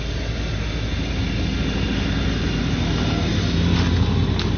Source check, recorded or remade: recorded